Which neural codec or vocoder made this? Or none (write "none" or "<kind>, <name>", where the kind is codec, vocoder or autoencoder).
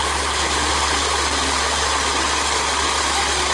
none